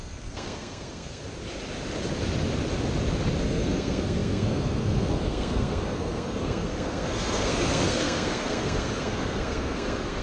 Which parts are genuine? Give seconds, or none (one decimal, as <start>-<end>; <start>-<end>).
1.2-3.4